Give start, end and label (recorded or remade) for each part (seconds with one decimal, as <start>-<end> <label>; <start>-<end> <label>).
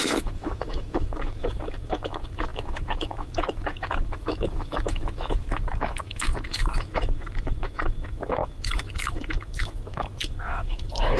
0.0-11.2 remade